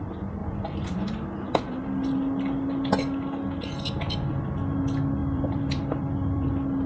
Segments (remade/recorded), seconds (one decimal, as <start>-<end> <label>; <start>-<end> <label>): 0.0-0.4 recorded; 0.4-3.0 remade; 3.0-5.2 recorded; 5.2-6.5 remade; 6.5-6.9 recorded